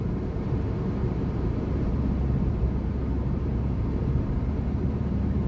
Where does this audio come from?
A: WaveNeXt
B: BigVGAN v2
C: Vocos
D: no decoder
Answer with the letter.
B